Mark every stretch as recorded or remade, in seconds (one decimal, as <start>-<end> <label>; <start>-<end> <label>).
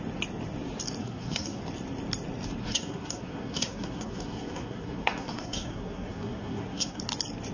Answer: 0.0-1.0 recorded; 1.0-1.6 remade; 1.6-2.6 recorded; 2.6-7.0 remade; 7.0-7.5 recorded